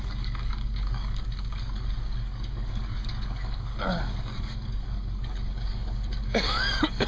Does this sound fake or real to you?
fake